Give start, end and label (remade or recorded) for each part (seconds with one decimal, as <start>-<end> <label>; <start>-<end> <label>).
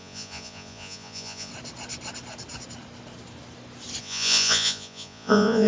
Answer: 0.0-1.5 remade; 1.5-4.0 recorded; 4.0-5.7 remade